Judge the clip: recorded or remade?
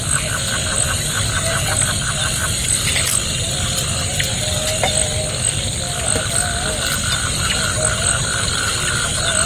recorded